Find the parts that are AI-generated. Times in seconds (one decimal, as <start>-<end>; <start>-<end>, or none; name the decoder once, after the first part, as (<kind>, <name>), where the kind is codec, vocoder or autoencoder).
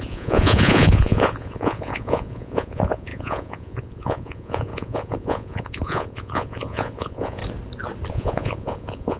0.0-7.4 (vocoder, Vocos); 8.1-9.2